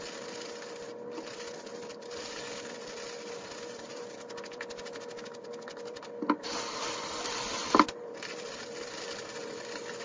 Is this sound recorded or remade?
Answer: remade